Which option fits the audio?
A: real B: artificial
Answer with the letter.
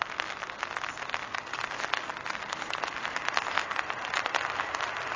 A